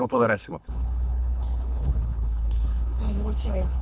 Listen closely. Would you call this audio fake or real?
fake